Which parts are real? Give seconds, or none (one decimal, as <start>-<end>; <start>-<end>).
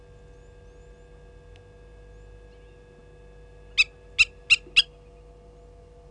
0.0-6.1